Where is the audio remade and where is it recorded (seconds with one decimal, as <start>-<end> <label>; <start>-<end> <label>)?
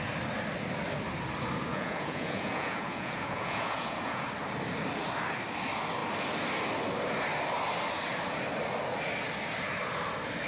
0.0-1.7 recorded; 1.7-4.2 remade; 4.2-10.5 recorded